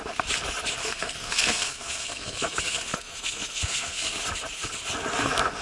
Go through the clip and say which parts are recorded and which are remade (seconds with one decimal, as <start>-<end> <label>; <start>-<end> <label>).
0.0-0.8 recorded; 0.8-4.2 remade; 4.2-5.6 recorded

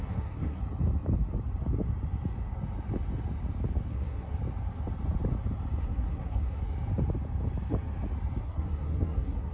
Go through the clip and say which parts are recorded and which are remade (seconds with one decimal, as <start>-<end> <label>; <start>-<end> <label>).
0.0-0.6 remade; 0.6-3.9 recorded; 3.9-4.3 remade; 4.3-5.8 recorded; 5.8-6.6 remade; 6.6-8.4 recorded; 8.4-9.5 remade

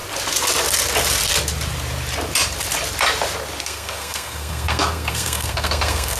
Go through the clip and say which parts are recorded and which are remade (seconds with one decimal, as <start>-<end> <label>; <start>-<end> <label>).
0.0-3.6 recorded; 3.6-6.2 remade

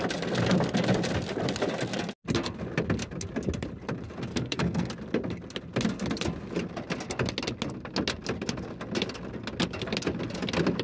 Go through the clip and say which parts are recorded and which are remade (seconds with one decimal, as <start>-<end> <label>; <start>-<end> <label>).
0.0-4.3 recorded; 4.3-4.9 remade; 4.9-10.8 recorded